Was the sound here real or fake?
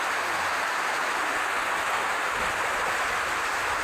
real